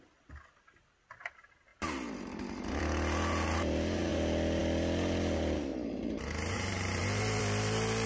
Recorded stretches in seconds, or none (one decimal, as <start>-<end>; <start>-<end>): 0.0-1.7; 2.8-5.7; 7.4-8.1